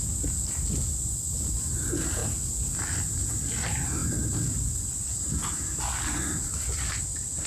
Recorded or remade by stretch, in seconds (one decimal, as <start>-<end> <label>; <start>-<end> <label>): 0.0-7.5 recorded